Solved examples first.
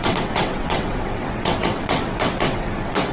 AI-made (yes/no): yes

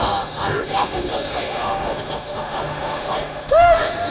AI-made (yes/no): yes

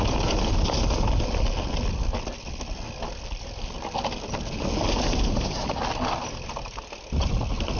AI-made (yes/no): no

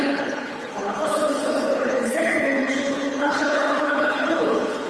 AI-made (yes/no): yes